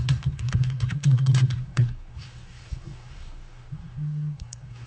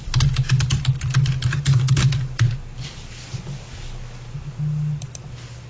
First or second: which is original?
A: second